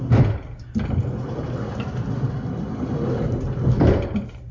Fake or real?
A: real